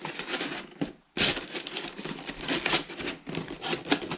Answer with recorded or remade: recorded